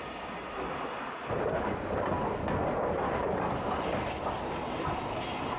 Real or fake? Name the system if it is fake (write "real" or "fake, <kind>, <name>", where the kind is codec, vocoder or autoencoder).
real